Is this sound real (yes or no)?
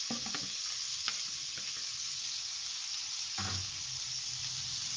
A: yes